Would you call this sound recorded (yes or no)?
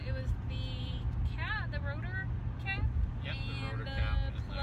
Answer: yes